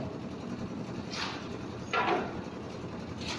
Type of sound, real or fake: real